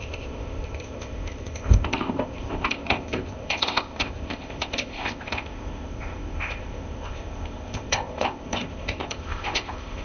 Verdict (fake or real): fake